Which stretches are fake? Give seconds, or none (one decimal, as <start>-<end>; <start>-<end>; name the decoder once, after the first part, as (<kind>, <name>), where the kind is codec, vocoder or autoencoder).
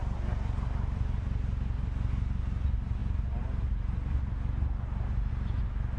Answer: 0.0-2.4 (vocoder, BigVGAN v2)